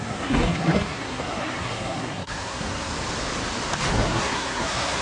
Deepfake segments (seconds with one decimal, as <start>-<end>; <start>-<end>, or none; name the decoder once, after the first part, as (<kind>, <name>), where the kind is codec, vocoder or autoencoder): 0.0-2.9 (codec, SNAC); 3.9-5.0